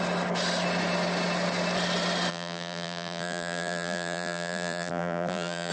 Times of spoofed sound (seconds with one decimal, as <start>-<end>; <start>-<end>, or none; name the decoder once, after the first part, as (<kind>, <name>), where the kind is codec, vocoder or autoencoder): 2.3-5.7 (vocoder, BigVGAN v2)